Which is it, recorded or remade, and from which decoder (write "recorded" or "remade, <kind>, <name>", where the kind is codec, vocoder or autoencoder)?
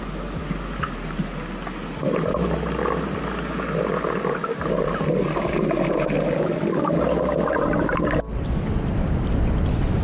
recorded